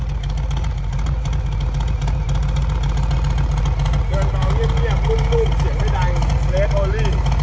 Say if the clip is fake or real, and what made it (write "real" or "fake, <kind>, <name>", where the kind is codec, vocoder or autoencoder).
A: real